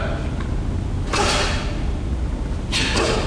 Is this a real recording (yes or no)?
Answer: yes